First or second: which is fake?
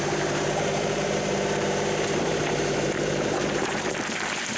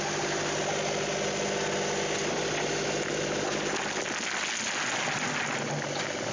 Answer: first